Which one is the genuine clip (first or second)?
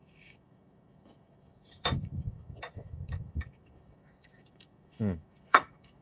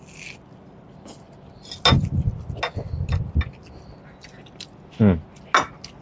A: second